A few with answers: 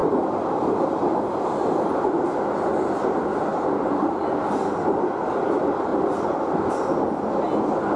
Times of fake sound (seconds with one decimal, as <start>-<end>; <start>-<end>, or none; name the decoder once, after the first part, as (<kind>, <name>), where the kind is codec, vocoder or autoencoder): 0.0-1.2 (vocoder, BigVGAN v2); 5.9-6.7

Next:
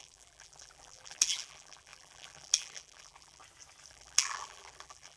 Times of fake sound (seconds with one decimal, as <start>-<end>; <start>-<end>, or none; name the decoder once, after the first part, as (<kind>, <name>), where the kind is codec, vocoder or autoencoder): 0.0-3.4 (vocoder, BigVGAN v2); 3.9-5.2

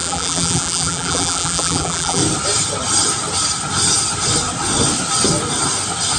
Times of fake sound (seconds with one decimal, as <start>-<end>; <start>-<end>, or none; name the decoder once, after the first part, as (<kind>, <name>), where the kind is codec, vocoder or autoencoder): 0.0-2.2 (vocoder, BigVGAN v2)

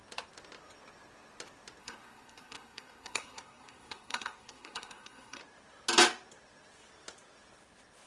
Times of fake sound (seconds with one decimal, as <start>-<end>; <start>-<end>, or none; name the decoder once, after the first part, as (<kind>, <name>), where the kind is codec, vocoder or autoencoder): 1.8-5.4 (codec, SNAC)

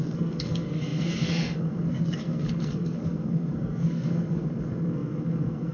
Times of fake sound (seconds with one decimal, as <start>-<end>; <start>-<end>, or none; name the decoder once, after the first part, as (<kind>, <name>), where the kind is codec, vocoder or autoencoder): 0.0-5.7 (codec, SNAC)